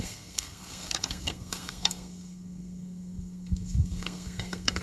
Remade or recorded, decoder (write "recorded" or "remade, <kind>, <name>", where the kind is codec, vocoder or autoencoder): remade, codec, SNAC